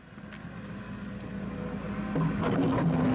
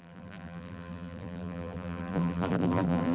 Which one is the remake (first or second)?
second